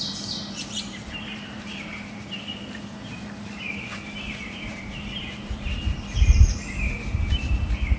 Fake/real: fake